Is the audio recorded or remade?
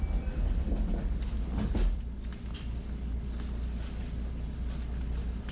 recorded